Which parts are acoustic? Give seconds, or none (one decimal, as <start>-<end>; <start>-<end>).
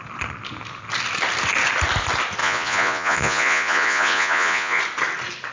0.0-2.4; 4.8-5.5